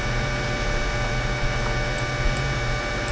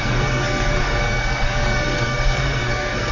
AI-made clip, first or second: second